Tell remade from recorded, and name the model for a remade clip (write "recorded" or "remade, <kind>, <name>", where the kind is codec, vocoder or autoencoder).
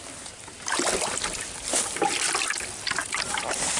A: recorded